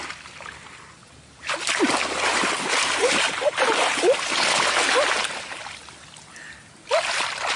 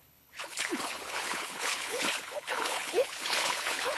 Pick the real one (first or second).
first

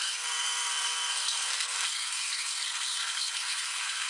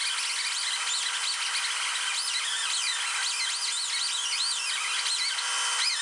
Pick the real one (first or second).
second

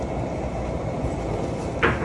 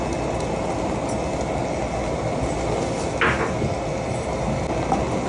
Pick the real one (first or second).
second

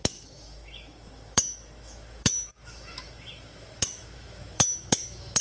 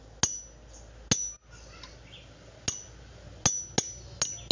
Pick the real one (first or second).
second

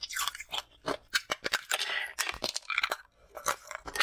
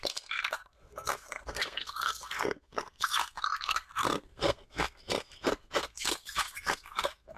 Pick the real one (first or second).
first